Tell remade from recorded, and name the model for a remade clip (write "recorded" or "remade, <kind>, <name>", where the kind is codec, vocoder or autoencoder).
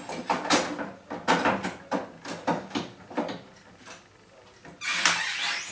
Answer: recorded